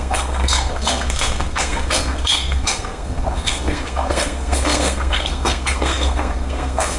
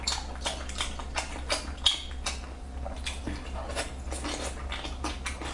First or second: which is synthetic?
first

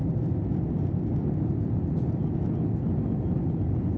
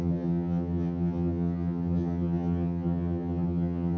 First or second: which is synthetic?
second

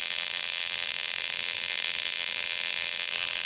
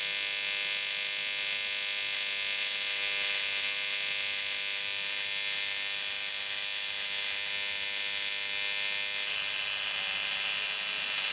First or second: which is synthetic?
first